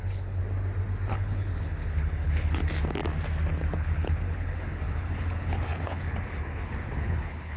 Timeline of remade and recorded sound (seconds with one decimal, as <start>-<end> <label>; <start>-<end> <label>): 0.0-0.4 remade; 0.4-1.1 recorded; 1.1-2.6 remade; 2.6-3.5 recorded; 3.5-7.6 remade